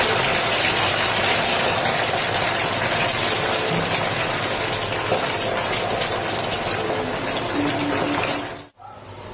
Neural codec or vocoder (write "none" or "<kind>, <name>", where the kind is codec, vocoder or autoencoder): none